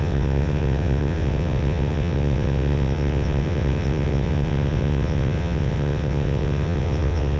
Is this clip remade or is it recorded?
remade